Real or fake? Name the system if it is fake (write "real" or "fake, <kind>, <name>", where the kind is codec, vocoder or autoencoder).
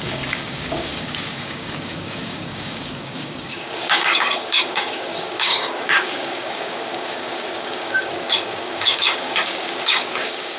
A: fake, codec, DAC